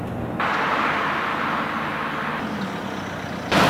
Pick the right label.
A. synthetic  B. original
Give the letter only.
B